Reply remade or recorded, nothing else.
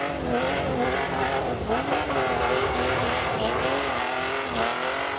recorded